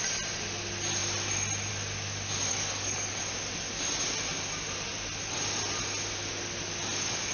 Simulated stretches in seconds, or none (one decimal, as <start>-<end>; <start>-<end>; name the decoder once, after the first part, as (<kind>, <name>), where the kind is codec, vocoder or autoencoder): 2.5-3.2 (codec, DAC)